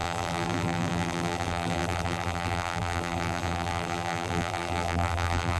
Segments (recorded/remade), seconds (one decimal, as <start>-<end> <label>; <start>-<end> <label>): 0.0-5.6 remade